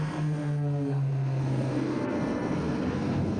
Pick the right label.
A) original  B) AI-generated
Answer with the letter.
B